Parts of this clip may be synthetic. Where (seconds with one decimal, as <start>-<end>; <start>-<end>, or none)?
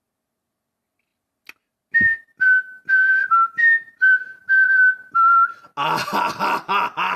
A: none